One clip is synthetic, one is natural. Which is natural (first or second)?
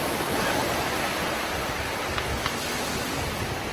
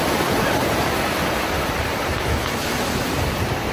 first